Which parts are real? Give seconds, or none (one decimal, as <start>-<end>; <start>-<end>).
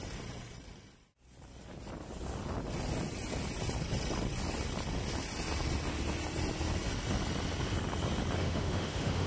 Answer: 0.0-8.4